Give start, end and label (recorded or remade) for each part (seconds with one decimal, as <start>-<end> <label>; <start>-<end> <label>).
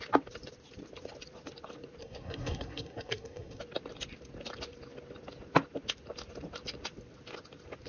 0.0-2.0 recorded; 2.0-3.6 remade; 3.6-7.9 recorded